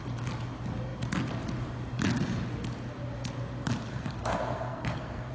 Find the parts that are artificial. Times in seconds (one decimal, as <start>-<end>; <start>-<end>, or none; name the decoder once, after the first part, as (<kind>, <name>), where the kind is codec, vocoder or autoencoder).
3.9-5.3 (codec, SNAC)